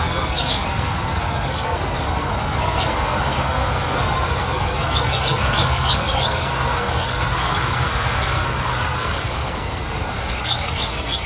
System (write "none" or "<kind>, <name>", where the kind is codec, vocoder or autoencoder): codec, SNAC